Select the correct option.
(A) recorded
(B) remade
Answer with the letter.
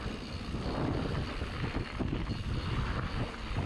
A